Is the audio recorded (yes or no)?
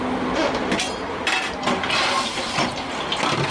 yes